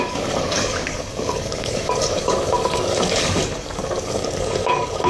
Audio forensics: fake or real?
fake